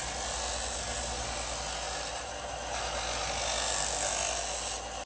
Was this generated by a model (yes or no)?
no